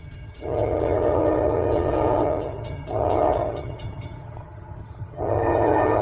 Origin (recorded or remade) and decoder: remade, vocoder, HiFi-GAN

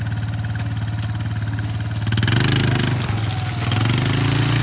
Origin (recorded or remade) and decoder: recorded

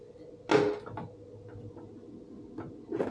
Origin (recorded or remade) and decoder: recorded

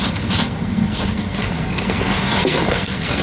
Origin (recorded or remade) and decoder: remade, codec, SNAC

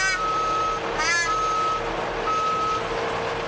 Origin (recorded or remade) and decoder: recorded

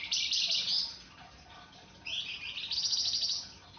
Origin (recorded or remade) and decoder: recorded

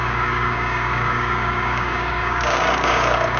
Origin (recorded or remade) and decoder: remade, codec, DAC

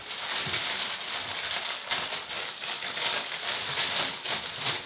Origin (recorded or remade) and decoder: recorded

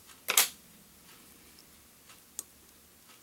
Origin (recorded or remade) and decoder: recorded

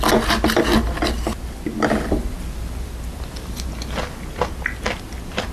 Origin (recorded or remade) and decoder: recorded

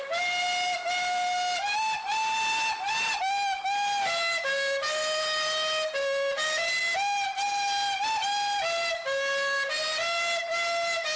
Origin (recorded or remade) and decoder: recorded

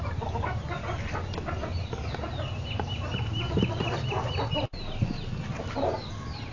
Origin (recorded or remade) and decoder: recorded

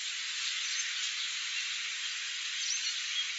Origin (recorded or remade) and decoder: recorded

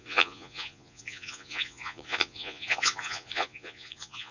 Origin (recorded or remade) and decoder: remade, vocoder, Vocos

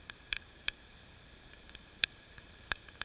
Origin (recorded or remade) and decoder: remade, vocoder, BigVGAN v2